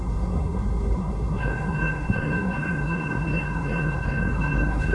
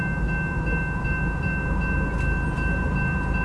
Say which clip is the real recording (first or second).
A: second